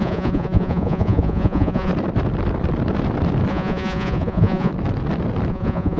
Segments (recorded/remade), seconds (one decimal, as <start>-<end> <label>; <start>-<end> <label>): 0.0-1.9 remade; 1.9-3.5 recorded; 3.5-4.7 remade; 4.7-5.5 recorded; 5.5-6.0 remade